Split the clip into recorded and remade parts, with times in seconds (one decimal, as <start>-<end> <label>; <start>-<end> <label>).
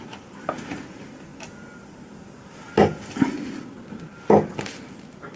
0.0-5.4 recorded